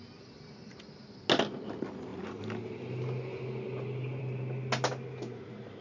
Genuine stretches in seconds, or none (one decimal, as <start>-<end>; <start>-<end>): 0.0-5.8